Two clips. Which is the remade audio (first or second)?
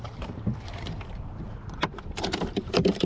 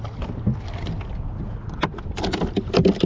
first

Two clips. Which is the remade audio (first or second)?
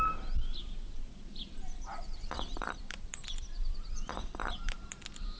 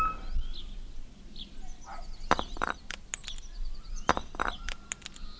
first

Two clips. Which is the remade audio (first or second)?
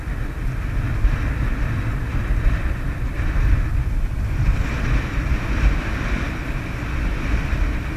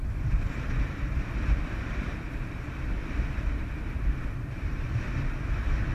second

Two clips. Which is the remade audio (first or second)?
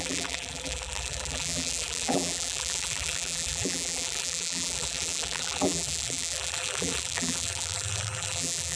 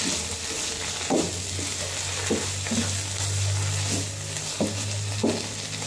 first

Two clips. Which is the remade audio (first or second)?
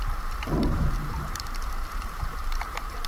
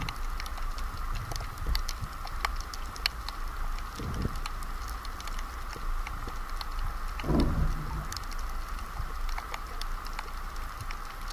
first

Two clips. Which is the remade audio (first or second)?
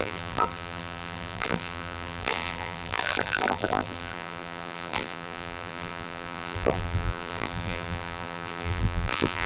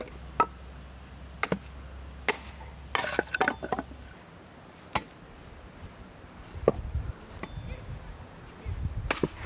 first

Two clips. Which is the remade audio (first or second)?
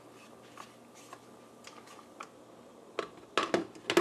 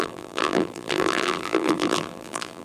second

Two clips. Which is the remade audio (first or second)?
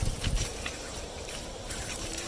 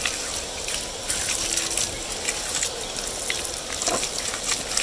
first